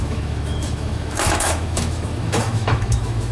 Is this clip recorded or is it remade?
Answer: remade